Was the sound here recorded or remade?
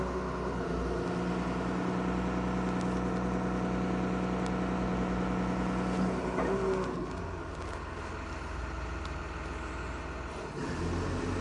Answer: recorded